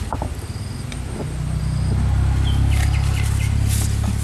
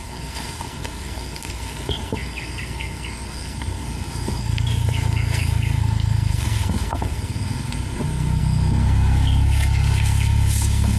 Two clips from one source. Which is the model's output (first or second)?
second